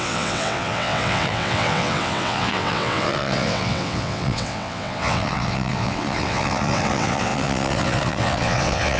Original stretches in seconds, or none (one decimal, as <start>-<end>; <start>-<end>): none